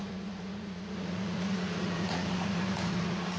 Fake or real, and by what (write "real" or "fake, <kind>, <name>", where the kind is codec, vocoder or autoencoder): fake, vocoder, Vocos